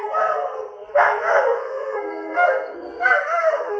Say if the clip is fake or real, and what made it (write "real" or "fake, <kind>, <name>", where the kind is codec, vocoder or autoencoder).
fake, codec, SNAC